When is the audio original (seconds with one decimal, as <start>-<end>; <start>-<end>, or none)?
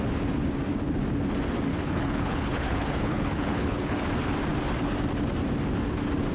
0.0-1.7; 4.0-6.3